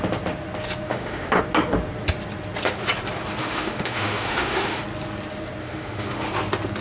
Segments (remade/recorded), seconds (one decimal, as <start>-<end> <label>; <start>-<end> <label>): 0.0-0.9 recorded; 0.9-1.4 remade; 1.4-3.4 recorded; 3.4-4.8 remade; 4.8-5.6 recorded; 5.6-6.3 remade; 6.3-6.8 recorded

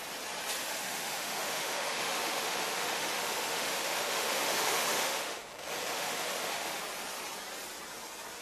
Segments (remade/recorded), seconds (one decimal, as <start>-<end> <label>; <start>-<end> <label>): 0.0-0.6 recorded; 0.6-5.5 remade; 5.5-5.9 recorded; 5.9-6.8 remade; 6.8-8.4 recorded

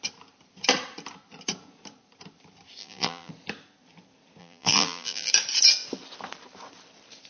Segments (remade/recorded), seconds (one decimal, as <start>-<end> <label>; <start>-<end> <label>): 0.0-2.8 recorded; 2.8-3.3 remade; 3.3-4.4 recorded; 4.4-5.3 remade; 5.3-7.3 recorded

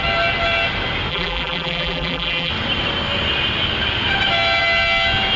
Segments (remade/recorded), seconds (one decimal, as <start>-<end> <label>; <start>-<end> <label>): 0.0-1.1 recorded; 1.1-2.5 remade; 2.5-5.4 recorded

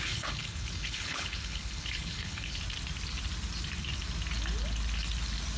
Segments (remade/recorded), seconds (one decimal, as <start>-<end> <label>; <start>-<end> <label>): 0.0-2.6 remade; 2.6-5.6 recorded

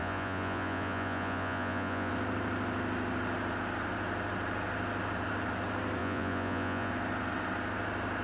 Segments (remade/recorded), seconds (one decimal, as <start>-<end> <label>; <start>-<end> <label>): 0.0-2.1 remade; 2.1-6.0 recorded; 6.0-6.9 remade; 6.9-8.2 recorded